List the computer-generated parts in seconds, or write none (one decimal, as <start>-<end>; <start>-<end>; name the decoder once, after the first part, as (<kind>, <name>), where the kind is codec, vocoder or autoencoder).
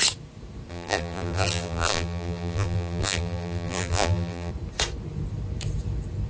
0.7-4.5 (vocoder, BigVGAN v2)